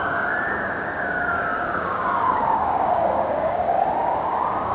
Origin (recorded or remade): remade